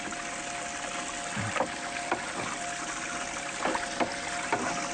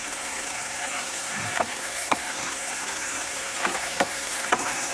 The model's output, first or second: second